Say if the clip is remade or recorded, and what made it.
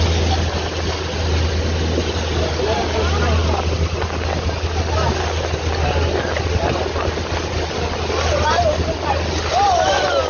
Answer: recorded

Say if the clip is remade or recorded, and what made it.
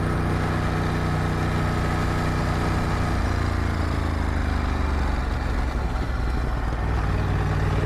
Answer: recorded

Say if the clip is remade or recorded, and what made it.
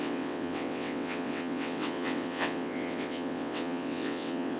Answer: remade, vocoder, WaveNeXt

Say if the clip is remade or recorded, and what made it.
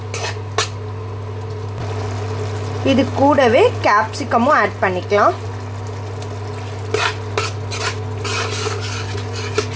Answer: recorded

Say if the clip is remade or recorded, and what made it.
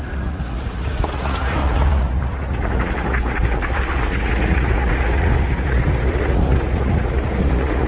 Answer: remade, vocoder, Vocos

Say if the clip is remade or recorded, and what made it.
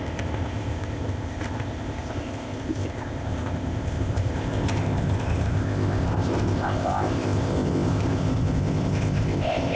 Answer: remade, codec, ZipCodec